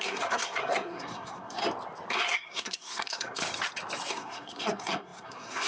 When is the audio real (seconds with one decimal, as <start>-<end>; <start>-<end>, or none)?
1.6-2.1; 3.4-4.1